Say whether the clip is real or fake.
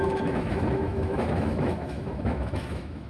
fake